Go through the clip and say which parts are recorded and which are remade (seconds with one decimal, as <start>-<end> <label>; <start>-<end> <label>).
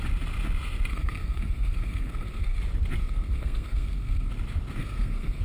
0.0-0.9 recorded; 0.9-2.6 remade; 2.6-3.0 recorded; 3.0-4.3 remade; 4.3-4.8 recorded; 4.8-5.4 remade